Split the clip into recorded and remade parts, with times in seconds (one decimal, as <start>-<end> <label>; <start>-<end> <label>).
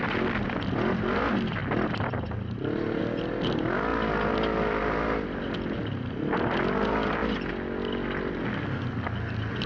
0.0-9.7 recorded